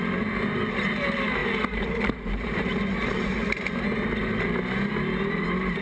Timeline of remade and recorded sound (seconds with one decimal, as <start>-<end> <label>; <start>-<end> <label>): 0.0-5.8 recorded